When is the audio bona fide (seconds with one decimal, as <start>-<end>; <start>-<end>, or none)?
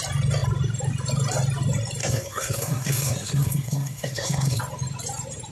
0.0-2.0; 4.6-5.5